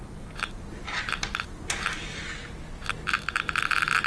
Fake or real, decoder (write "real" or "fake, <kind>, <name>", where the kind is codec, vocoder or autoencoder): real